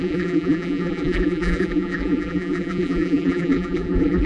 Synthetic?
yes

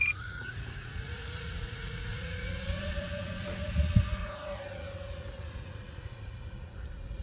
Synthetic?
yes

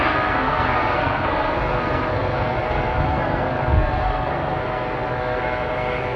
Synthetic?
yes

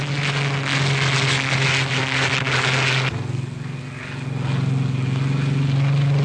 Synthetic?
no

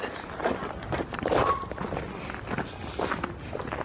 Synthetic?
no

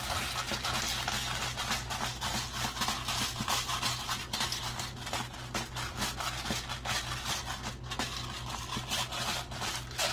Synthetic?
no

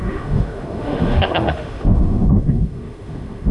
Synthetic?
yes